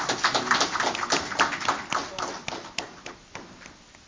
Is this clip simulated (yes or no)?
no